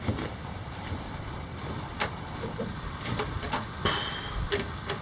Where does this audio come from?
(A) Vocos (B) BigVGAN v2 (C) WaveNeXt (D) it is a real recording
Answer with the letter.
D